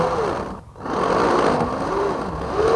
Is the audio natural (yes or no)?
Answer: yes